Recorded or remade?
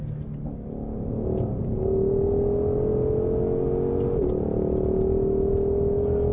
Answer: recorded